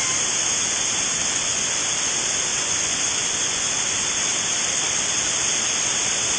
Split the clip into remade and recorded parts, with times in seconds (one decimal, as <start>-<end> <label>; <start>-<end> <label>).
0.0-1.2 recorded; 1.2-1.8 remade; 1.8-2.5 recorded; 2.5-3.7 remade; 3.7-6.4 recorded